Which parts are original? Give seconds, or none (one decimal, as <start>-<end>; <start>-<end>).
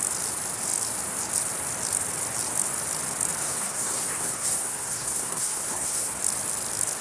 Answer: 0.0-3.4; 6.1-7.0